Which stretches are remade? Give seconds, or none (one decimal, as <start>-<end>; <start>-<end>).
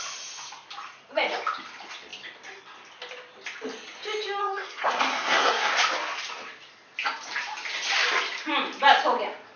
4.4-5.7